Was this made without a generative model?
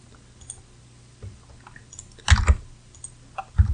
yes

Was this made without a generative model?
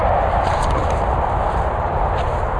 yes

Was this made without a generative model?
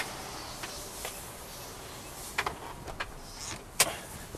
yes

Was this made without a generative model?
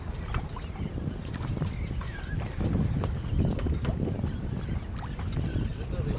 yes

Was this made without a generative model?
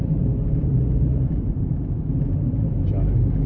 no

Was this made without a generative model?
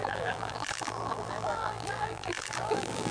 no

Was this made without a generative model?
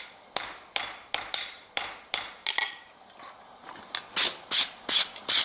yes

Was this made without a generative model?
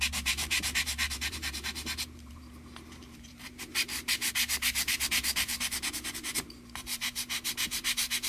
no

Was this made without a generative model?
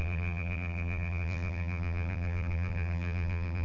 no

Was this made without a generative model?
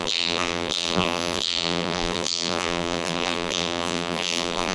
no